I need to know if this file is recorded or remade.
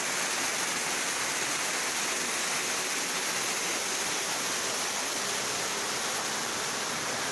recorded